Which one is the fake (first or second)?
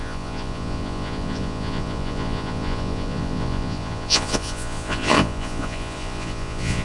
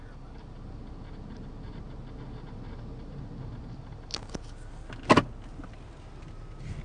first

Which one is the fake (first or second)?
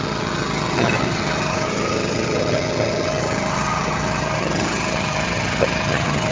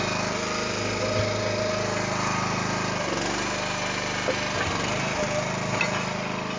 first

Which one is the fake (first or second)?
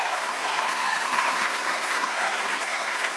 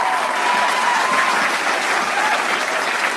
first